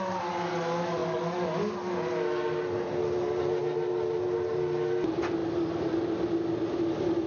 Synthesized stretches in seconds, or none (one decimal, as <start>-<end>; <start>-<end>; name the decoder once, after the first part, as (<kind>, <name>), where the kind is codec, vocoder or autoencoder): none